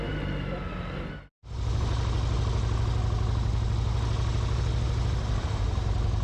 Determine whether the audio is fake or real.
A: real